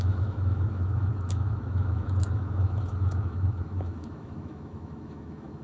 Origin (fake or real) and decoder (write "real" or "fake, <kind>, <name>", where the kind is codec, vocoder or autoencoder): fake, autoencoder, DAC-VAE